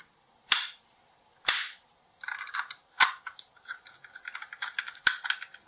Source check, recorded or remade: recorded